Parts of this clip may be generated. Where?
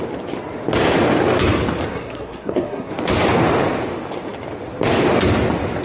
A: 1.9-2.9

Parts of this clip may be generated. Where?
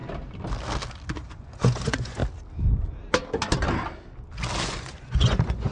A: 1.3-2.2; 4.6-5.7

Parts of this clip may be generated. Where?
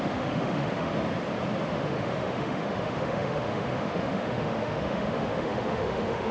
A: 0.0-0.9; 1.6-6.3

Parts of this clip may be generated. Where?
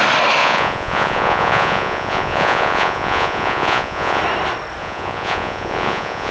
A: 0.4-4.2; 4.8-6.3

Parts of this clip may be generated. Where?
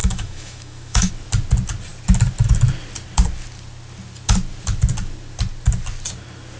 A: 0.0-1.1